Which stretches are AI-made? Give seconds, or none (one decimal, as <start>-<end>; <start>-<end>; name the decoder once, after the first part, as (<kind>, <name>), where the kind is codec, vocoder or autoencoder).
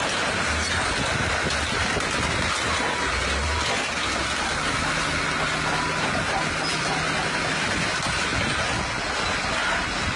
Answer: none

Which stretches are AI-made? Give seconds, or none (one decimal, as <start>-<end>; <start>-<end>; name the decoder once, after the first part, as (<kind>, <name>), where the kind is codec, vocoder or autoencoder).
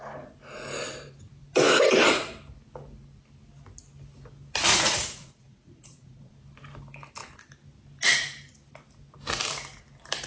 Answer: 4.7-6.3 (vocoder, Vocos)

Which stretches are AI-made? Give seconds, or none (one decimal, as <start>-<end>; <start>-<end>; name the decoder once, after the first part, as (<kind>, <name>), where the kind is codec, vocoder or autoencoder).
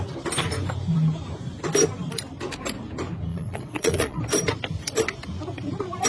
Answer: 3.3-4.2 (vocoder, Vocos)